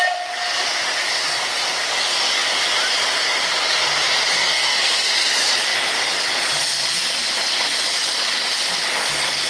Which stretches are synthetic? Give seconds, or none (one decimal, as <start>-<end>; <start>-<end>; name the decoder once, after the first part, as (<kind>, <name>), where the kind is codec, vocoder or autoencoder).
4.4-5.1 (codec, SNAC)